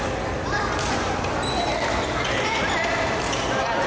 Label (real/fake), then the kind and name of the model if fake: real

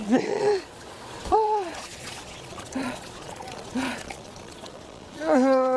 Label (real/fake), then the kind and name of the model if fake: fake, vocoder, Vocos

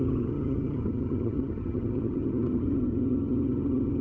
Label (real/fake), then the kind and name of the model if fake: fake, vocoder, HiFi-GAN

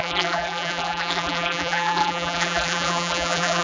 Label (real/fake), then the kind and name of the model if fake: fake, vocoder, BigVGAN v2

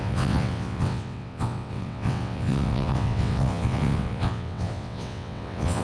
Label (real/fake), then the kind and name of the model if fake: fake, vocoder, WaveNeXt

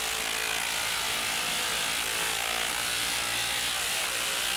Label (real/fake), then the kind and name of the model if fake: real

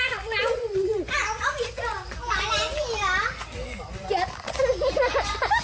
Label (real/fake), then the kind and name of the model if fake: real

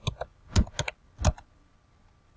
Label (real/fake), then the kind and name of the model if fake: real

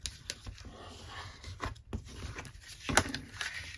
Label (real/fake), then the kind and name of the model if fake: real